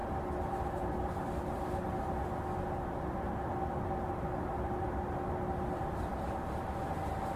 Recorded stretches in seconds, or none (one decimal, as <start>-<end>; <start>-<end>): 0.0-7.4